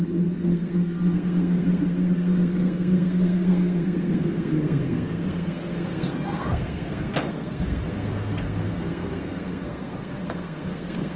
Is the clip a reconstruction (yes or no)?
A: yes